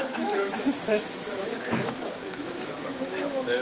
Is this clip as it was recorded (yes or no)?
no